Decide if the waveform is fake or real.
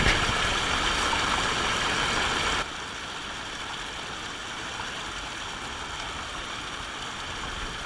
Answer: real